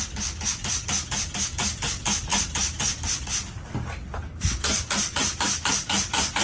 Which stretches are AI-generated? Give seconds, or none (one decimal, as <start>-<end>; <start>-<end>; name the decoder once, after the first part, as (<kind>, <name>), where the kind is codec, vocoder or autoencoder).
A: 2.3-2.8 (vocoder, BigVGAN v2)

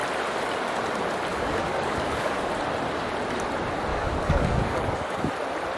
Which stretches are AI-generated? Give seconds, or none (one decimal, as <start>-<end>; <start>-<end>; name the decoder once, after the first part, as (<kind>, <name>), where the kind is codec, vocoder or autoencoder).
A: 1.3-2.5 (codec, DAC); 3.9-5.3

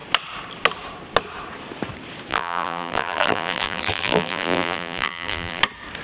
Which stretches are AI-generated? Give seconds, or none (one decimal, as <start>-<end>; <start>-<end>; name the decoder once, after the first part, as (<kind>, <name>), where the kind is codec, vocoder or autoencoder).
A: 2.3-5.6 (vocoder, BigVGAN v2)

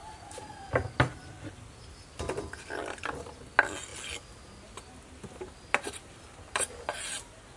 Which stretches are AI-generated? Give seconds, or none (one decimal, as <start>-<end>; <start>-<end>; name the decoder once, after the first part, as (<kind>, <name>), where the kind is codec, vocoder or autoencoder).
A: 0.0-0.6 (vocoder, BigVGAN v2)